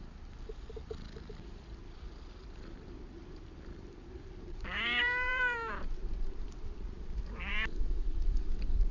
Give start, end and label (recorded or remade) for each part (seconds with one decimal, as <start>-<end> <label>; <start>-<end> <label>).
0.0-8.9 remade